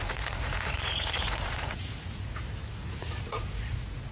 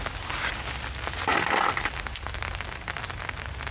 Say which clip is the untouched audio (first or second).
second